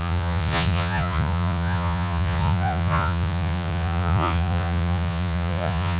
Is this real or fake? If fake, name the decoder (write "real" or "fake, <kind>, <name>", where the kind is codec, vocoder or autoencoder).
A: fake, vocoder, Vocos